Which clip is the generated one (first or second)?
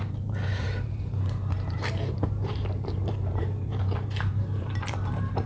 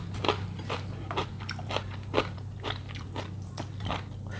first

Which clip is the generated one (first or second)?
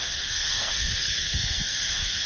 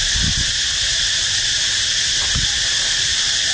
first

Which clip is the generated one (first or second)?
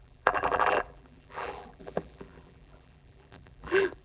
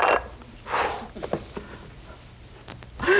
first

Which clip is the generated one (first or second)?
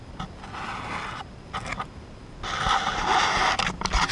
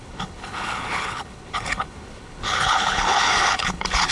second